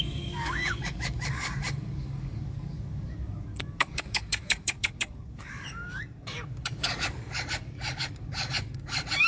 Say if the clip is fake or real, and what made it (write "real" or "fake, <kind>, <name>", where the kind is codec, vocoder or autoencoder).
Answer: fake, codec, DAC